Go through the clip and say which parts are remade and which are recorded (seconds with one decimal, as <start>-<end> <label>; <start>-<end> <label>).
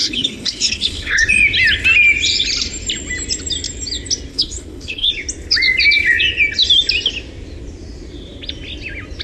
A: 0.0-1.3 remade; 1.3-4.3 recorded; 4.3-5.1 remade; 5.1-9.2 recorded